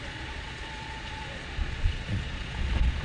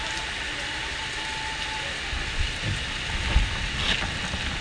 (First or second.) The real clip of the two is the second